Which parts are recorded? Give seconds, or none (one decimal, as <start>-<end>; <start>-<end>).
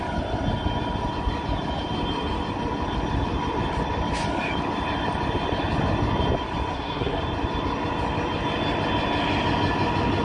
0.0-6.7; 7.2-10.2